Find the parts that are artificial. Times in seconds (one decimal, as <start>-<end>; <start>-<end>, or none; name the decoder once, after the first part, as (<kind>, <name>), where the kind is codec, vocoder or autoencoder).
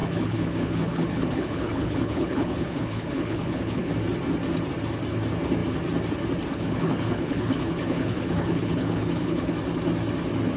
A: 0.0-3.9 (codec, HILCodec); 6.5-9.5